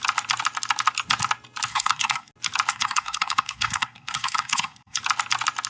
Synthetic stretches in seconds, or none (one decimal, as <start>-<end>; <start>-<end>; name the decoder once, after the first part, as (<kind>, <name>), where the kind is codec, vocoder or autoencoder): 1.7-2.3 (codec, SNAC); 2.7-5.0